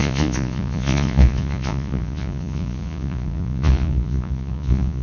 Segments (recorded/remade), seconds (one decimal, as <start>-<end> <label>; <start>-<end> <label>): 0.0-5.0 remade

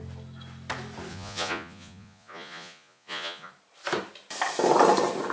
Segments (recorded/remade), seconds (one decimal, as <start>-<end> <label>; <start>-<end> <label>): 0.0-1.1 recorded; 1.1-3.5 remade; 3.5-5.3 recorded